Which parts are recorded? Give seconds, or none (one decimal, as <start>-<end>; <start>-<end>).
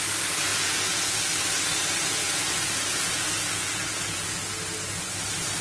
0.0-0.5; 1.2-2.0; 4.4-5.6